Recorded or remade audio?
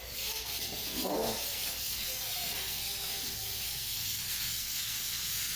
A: remade